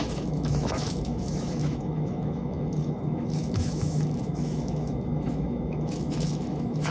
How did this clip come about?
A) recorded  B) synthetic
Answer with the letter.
B